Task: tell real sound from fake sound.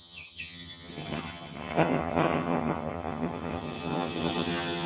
fake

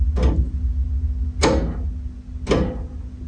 real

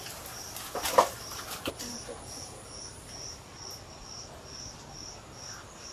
real